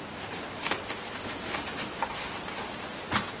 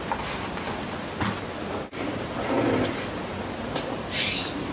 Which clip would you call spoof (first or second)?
first